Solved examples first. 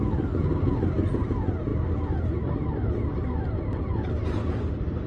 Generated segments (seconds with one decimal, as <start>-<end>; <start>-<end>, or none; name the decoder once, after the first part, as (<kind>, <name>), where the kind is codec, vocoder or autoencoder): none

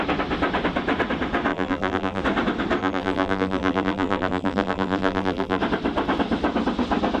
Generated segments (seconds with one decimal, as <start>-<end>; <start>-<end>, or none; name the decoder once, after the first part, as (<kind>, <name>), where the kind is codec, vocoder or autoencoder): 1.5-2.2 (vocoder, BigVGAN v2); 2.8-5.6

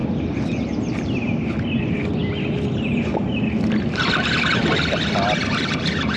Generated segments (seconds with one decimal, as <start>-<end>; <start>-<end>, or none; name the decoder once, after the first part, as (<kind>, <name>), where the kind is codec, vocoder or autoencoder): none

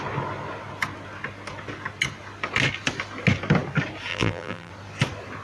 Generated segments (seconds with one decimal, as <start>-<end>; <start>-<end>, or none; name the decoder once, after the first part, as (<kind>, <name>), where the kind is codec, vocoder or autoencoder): 4.1-4.7 (vocoder, BigVGAN v2)

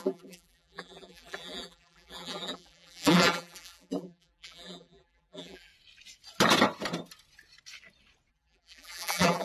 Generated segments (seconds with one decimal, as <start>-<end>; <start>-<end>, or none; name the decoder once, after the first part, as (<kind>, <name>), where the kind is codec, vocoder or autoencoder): 0.0-5.7 (vocoder, BigVGAN v2); 8.3-9.4

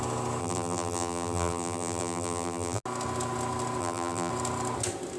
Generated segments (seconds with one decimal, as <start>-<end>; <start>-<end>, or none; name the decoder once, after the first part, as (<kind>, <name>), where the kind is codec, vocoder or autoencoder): 0.4-2.8 (vocoder, BigVGAN v2); 3.8-4.3

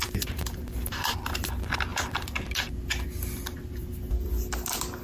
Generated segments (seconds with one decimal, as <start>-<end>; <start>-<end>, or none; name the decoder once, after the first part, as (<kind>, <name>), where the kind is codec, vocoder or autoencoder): 1.9-2.5 (vocoder, BigVGAN v2)

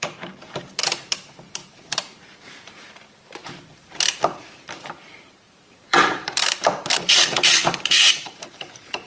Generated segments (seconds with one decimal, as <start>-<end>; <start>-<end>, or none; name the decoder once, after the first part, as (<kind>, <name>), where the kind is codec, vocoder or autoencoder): 0.0-9.1 (vocoder, BigVGAN v2)